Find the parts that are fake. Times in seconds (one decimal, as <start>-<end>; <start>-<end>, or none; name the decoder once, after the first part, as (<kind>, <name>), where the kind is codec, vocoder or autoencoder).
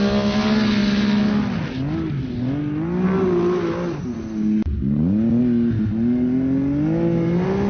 none